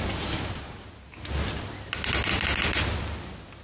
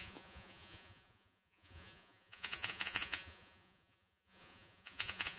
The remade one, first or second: second